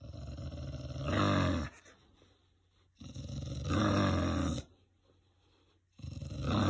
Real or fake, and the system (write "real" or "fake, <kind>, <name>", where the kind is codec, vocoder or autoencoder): real